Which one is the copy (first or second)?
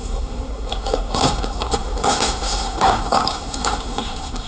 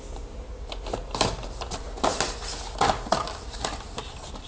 first